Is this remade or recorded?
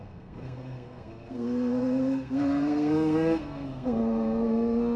remade